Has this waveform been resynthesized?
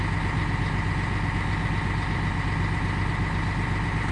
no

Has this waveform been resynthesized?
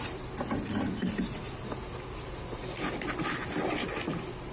no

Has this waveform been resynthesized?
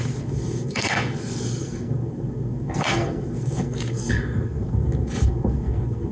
yes